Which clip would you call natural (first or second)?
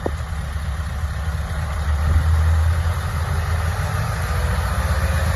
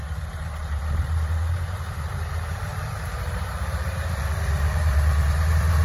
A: first